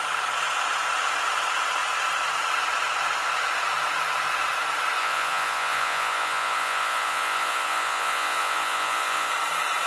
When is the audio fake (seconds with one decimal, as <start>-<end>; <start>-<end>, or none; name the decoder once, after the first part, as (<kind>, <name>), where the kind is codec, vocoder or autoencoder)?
5.0-9.3 (vocoder, Vocos)